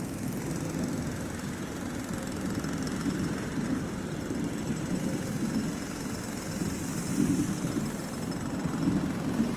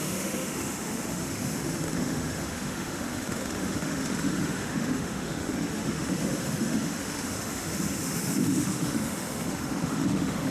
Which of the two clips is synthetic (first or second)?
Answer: second